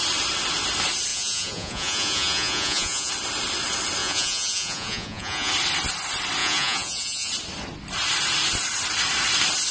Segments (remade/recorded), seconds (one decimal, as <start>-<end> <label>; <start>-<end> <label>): 0.0-1.1 recorded; 1.1-3.1 remade; 3.1-4.0 recorded; 4.0-5.5 remade; 5.5-6.4 recorded; 6.4-7.3 remade; 7.3-9.7 recorded